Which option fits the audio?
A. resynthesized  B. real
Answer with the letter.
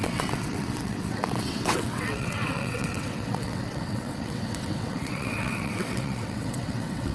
A